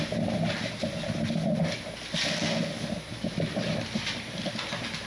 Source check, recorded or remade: recorded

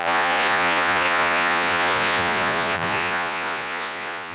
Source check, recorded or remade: remade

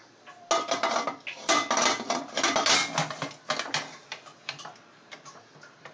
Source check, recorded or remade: recorded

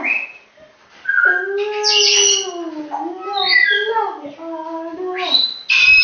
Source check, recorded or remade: recorded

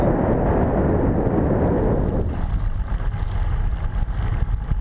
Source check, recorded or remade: recorded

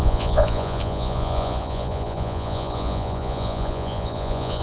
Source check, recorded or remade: remade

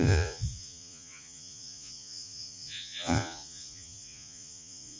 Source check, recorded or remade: remade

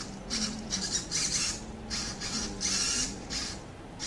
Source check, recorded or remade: recorded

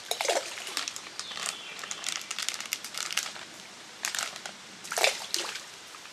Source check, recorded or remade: remade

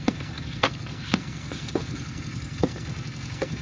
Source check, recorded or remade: remade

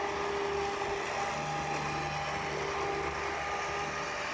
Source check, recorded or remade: recorded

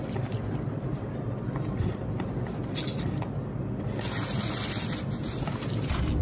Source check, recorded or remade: recorded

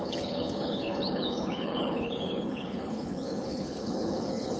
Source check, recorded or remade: remade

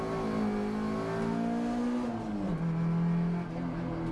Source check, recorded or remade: recorded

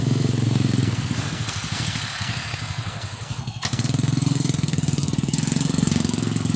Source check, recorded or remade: remade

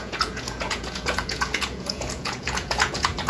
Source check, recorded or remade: remade